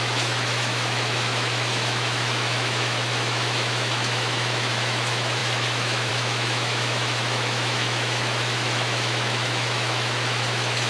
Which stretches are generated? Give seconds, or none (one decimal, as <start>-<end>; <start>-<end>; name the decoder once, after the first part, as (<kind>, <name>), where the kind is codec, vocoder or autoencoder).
0.0-10.9 (autoencoder, DAC-VAE)

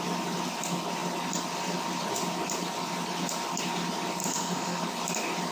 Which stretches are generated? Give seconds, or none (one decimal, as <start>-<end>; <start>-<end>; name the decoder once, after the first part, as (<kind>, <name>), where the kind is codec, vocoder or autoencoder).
4.2-4.8 (autoencoder, DAC-VAE)

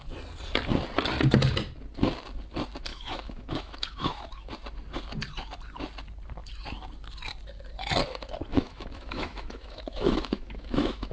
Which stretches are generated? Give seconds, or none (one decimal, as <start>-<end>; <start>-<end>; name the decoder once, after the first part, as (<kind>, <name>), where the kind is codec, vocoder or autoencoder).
2.9-4.5 (autoencoder, DAC-VAE); 8.5-11.1

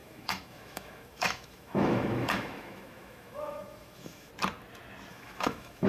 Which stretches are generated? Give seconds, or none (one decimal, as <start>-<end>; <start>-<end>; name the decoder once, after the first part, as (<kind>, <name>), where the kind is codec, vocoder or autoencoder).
0.0-4.3 (autoencoder, DAC-VAE); 5.1-5.9

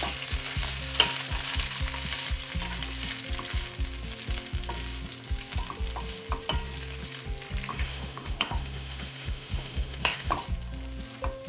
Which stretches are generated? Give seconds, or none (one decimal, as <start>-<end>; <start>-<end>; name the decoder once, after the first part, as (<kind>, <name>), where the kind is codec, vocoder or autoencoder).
7.7-10.3 (autoencoder, DAC-VAE)

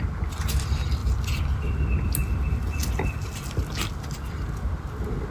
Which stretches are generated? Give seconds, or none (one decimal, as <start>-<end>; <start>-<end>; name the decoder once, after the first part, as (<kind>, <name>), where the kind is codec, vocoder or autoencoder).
none

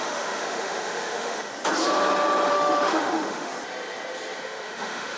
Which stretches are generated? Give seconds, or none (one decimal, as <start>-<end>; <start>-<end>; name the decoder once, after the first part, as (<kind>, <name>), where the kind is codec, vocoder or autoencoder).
0.0-1.5 (autoencoder, DAC-VAE); 2.5-3.5; 4.4-5.2

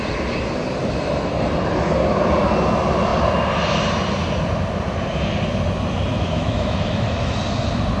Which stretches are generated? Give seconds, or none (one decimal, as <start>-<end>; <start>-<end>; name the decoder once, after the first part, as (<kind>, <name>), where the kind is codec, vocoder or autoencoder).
6.1-7.4 (autoencoder, DAC-VAE)